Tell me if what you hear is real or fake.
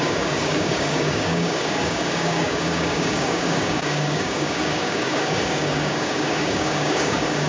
fake